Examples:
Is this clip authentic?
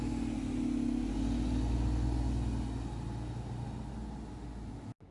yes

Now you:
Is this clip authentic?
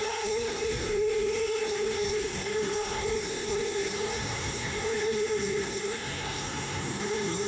no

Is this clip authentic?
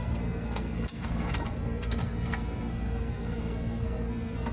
no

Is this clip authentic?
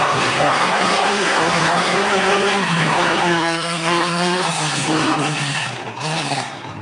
no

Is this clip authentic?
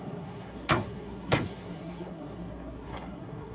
no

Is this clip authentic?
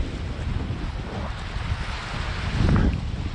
yes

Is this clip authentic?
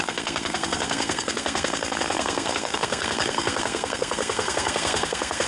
no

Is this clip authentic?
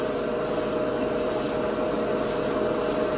yes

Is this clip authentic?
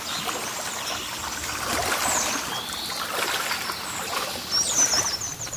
yes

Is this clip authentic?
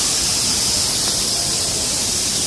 yes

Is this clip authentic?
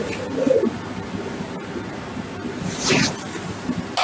yes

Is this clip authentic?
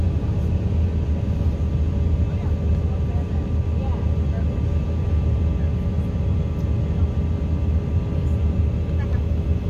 yes